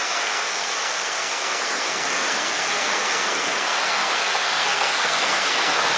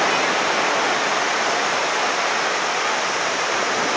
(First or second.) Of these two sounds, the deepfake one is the first